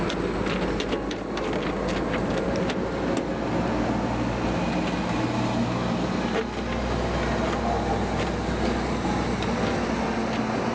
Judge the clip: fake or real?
real